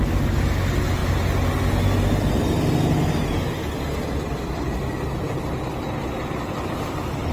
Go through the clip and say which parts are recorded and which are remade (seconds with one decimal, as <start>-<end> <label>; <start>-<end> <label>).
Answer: 0.0-7.3 recorded